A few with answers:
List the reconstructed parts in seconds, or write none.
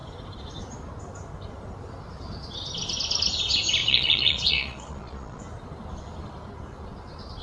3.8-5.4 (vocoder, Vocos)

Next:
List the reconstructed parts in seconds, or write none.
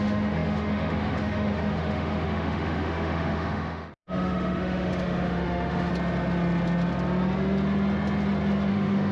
0.0-5.9 (autoencoder, DAC-VAE); 8.7-9.1